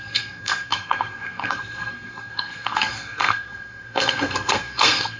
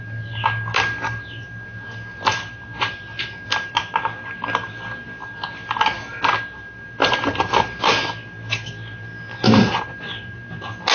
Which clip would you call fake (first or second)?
first